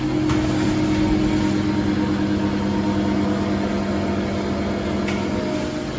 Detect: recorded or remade recorded